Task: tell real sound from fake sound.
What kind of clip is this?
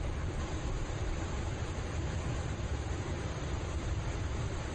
real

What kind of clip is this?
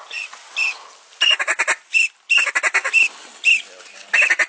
real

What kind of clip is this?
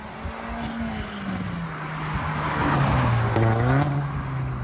real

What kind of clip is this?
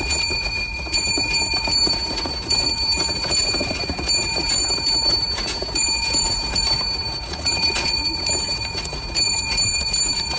fake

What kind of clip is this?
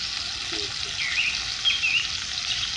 real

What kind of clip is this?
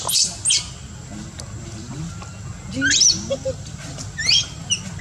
real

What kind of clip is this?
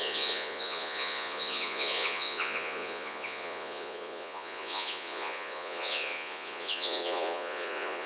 fake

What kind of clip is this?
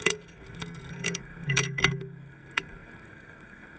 fake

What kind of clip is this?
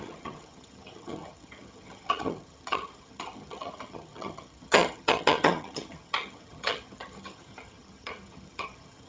fake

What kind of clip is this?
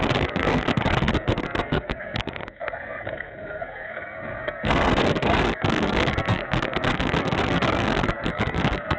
fake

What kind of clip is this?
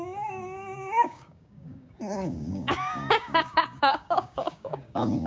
fake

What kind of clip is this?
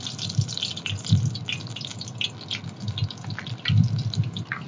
real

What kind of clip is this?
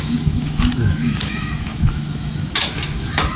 fake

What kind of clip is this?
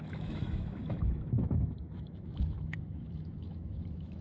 fake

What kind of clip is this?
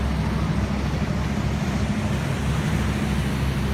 real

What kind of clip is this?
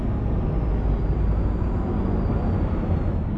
real